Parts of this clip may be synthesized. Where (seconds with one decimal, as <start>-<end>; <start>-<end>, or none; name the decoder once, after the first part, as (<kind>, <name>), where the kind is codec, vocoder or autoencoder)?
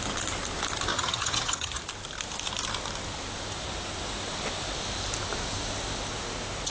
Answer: 0.9-1.8 (vocoder, HiFi-GAN)